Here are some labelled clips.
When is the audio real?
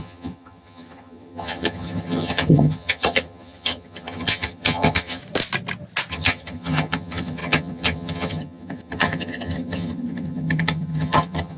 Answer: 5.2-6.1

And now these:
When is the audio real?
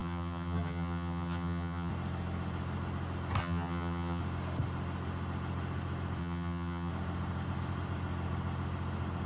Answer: 1.9-3.4; 4.2-6.2; 6.9-9.3